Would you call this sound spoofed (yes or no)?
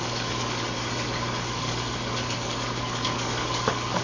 yes